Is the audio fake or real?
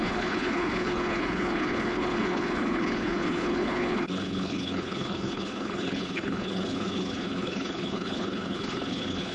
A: fake